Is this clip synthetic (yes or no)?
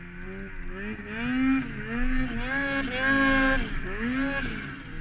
no